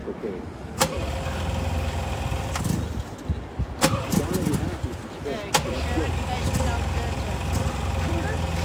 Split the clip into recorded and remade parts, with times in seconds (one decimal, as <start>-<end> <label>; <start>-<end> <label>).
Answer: 0.0-8.6 recorded